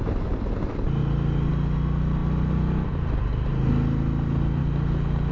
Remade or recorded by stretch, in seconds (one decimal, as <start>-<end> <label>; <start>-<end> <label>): 0.0-5.3 recorded